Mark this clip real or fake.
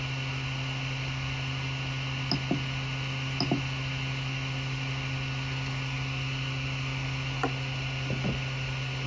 real